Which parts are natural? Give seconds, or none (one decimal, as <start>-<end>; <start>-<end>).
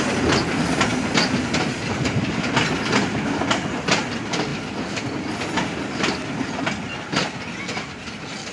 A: 0.0-8.5